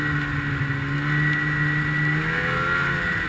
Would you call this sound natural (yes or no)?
yes